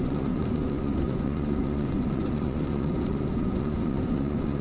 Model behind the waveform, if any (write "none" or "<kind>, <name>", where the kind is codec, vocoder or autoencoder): vocoder, Vocos